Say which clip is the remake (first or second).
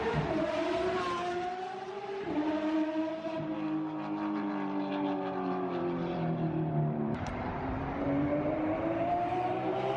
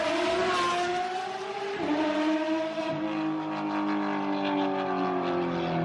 first